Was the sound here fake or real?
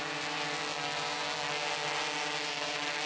real